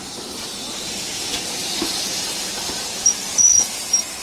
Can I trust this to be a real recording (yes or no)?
yes